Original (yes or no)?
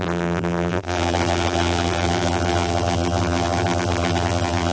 no